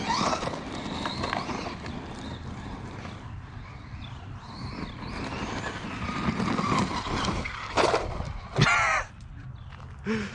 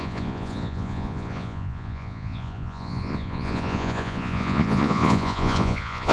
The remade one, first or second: second